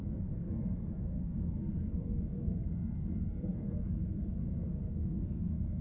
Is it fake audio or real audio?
fake